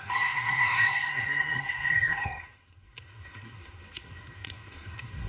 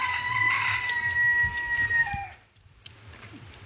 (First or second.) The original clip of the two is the second